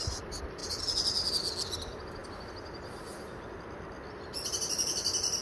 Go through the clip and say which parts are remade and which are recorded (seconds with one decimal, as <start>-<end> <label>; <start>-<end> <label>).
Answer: 0.0-5.4 recorded